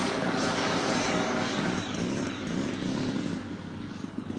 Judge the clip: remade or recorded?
remade